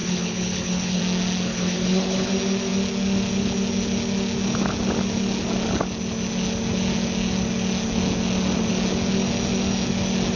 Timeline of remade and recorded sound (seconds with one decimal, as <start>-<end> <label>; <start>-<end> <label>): 0.0-1.0 remade; 1.0-1.5 recorded; 1.5-2.3 remade; 2.3-10.4 recorded